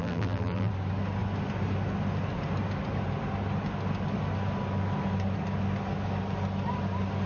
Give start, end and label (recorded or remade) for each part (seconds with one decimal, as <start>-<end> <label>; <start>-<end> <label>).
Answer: 0.0-0.7 remade; 0.7-7.3 recorded